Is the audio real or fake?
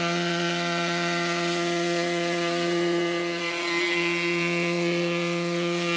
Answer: fake